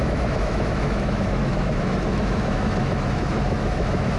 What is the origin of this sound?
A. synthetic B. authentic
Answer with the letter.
A